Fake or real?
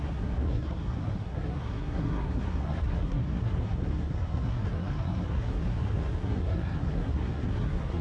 fake